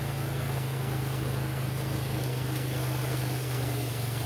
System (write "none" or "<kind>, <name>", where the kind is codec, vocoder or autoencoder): codec, SNAC